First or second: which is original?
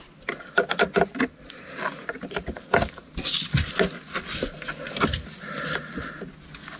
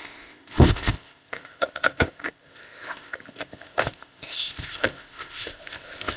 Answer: first